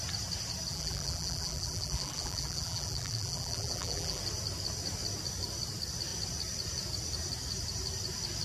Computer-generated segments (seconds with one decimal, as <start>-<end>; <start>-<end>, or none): 0.7-4.2